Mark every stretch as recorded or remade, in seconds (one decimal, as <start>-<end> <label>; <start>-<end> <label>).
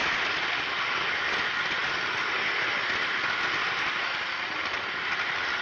0.0-5.6 recorded